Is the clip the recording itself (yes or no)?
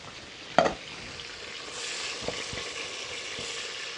yes